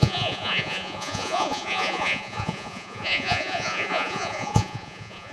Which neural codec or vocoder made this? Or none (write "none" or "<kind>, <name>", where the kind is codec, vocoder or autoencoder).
vocoder, Vocos